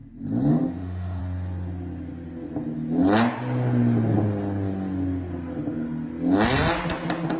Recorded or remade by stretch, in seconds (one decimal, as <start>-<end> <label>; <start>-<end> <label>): 0.0-0.5 recorded; 0.5-1.2 remade; 1.2-7.4 recorded